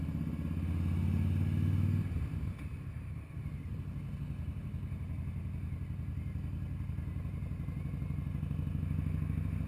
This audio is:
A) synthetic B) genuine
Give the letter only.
B